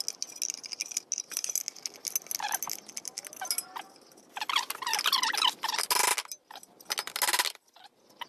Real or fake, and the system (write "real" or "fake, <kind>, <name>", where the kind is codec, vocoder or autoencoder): real